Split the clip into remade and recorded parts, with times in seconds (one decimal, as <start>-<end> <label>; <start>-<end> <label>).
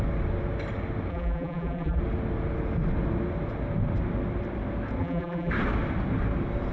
0.0-1.1 recorded; 1.1-2.0 remade; 2.0-5.0 recorded; 5.0-5.5 remade; 5.5-6.7 recorded